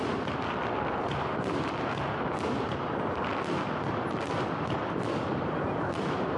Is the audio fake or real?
real